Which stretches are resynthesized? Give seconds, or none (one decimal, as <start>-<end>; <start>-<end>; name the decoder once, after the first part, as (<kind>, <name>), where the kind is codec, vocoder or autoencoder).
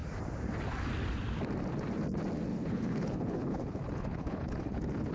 2.5-5.1 (codec, HILCodec)